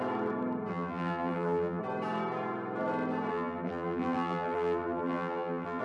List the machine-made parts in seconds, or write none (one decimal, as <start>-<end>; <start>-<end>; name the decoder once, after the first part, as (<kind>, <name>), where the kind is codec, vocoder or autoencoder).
0.7-1.8 (vocoder, BigVGAN v2); 3.3-5.8